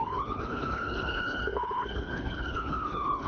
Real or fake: fake